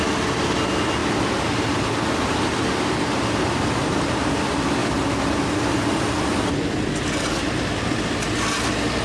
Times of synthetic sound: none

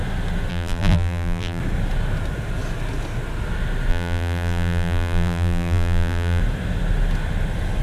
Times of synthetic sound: 0.5-1.6 (vocoder, BigVGAN v2); 3.9-6.4

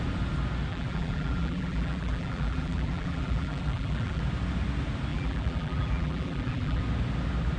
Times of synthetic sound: 0.7-4.2 (vocoder, BigVGAN v2); 5.1-6.8

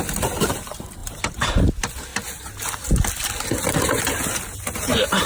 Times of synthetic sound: 0.0-2.1 (vocoder, BigVGAN v2); 4.5-5.3

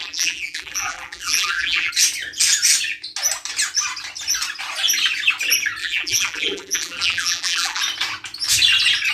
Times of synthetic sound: 0.0-1.9 (vocoder, BigVGAN v2); 5.8-7.8

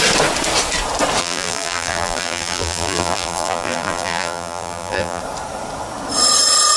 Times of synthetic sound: 1.2-5.2 (vocoder, BigVGAN v2)

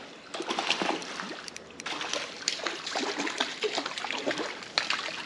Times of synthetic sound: 1.0-4.2 (vocoder, BigVGAN v2)

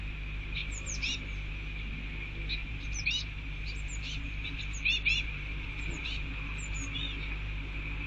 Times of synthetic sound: 0.6-1.5 (vocoder, BigVGAN v2); 2.6-6.3